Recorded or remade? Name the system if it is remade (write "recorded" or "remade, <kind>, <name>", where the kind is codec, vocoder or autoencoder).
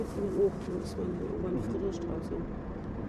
recorded